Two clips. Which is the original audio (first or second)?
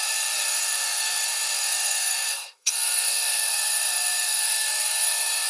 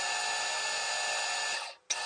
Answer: second